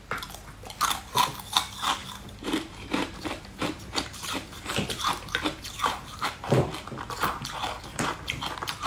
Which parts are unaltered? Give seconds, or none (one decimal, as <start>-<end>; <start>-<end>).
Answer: 0.0-2.0; 6.7-8.9